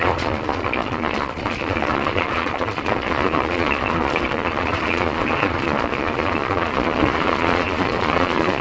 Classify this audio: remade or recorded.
remade